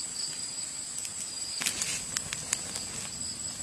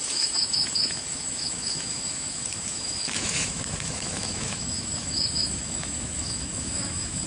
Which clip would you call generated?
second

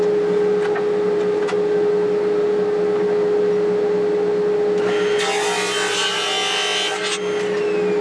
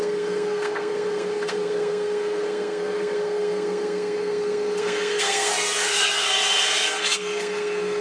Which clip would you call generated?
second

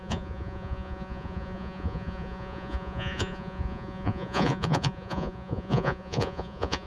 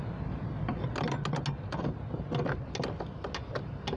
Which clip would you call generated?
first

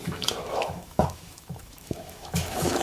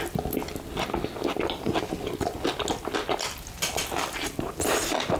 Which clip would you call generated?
first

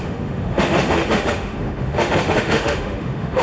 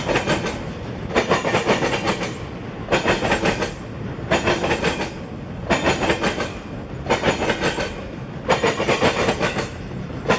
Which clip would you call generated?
first